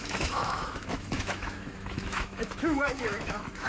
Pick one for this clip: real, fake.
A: fake